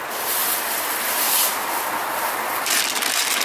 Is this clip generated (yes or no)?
no